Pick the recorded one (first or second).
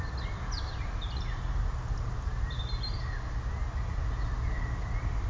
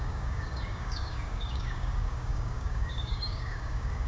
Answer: first